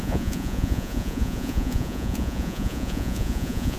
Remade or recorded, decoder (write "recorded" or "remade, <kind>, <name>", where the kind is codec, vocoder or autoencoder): remade, vocoder, Vocos